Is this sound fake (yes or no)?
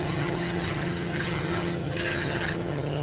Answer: yes